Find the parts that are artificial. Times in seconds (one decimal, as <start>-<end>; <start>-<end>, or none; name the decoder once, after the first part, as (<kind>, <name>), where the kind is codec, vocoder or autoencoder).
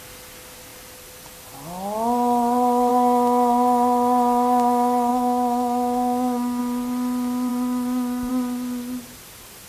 5.1-6.6 (autoencoder, DAC-VAE); 7.5-8.3